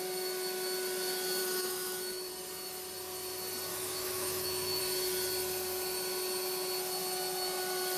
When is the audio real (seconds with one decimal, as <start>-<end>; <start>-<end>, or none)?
0.0-1.4; 2.3-3.7; 4.8-8.0